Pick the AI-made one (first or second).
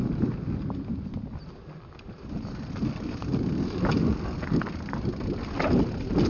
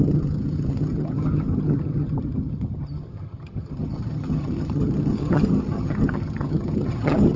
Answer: second